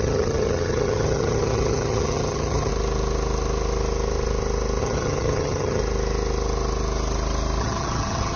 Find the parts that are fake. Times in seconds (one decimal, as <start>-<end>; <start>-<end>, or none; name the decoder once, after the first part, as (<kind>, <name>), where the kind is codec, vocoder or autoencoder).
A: 0.0-2.7 (vocoder, HiFi-GAN); 4.8-5.8; 7.6-8.4